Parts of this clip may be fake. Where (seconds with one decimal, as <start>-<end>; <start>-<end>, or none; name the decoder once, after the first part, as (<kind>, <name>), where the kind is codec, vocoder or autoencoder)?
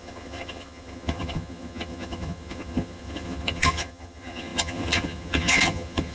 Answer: 0.0-6.1 (vocoder, HiFi-GAN)